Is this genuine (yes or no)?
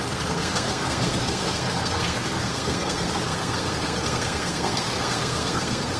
no